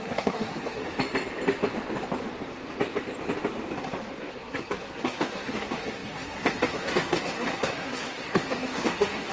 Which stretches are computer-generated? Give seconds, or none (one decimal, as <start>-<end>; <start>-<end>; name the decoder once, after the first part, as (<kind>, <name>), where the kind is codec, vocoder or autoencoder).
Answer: 0.0-0.8 (codec, SNAC); 4.3-9.3